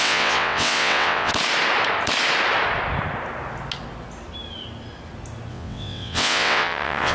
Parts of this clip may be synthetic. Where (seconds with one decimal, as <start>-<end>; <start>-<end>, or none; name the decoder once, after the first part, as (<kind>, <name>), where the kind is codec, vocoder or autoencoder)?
0.0-1.3 (vocoder, WaveNeXt); 5.5-7.1